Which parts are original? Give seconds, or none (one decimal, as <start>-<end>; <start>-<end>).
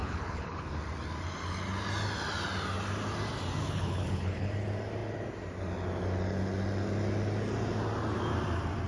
0.8-3.6; 4.5-8.9